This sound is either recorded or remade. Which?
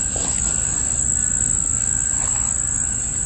recorded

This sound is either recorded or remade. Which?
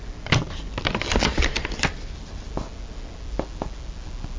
recorded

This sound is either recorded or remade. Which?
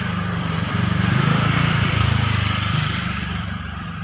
remade